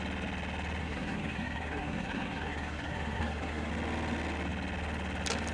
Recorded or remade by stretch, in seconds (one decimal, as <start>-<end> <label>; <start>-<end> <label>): 0.0-0.8 recorded; 0.8-3.7 remade; 3.7-5.5 recorded